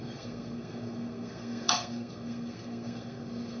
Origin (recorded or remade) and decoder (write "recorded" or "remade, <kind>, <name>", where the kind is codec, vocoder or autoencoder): remade, codec, SNAC